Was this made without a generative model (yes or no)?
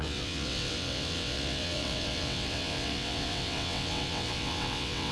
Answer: no